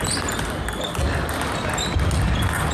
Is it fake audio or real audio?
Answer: real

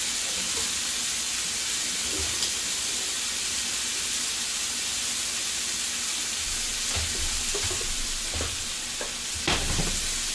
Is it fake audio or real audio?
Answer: real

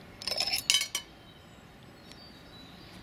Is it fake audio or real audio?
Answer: real